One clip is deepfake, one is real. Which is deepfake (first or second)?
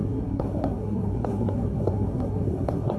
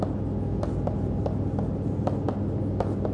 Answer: first